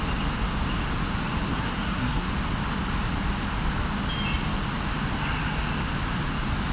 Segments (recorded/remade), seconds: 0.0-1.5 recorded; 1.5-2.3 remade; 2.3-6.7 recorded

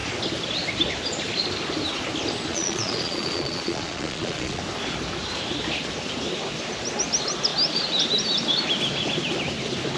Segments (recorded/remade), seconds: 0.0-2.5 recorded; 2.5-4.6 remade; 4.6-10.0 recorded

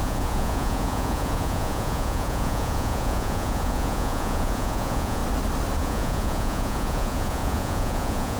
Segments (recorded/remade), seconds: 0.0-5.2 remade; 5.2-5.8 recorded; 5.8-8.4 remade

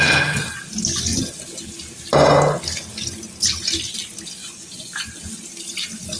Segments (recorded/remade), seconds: 0.0-4.4 recorded; 4.4-4.9 remade; 4.9-6.2 recorded

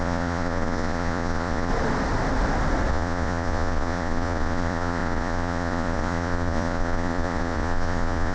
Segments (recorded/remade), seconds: 0.0-1.7 remade; 1.7-2.9 recorded; 2.9-8.3 remade